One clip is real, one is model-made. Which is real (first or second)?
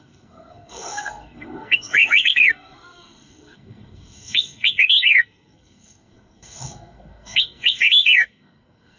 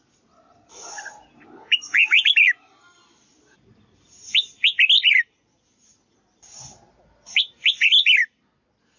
second